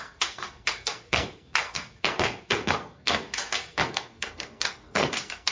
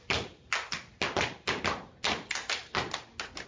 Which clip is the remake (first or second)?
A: first